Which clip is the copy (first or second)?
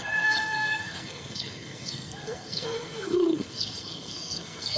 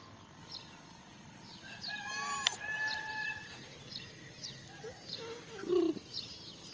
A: first